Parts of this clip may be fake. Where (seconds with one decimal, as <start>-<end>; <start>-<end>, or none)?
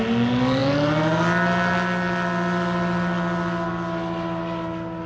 none